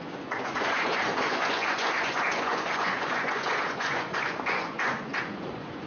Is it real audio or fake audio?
fake